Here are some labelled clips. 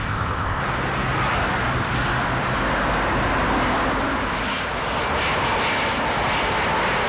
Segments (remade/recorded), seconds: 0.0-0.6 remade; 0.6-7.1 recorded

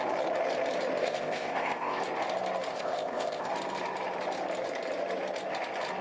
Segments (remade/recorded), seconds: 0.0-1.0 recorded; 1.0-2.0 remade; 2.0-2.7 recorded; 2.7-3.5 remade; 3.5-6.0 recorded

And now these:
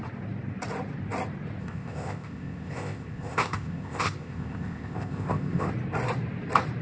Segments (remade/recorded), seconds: 0.0-1.6 recorded; 1.6-5.7 remade; 5.7-6.8 recorded